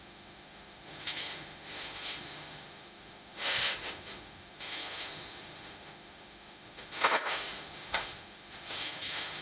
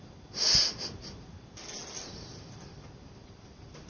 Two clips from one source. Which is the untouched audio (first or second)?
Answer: second